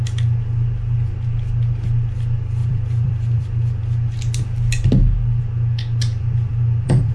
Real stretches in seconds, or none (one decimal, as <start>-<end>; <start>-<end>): 0.0-2.6; 3.4-6.1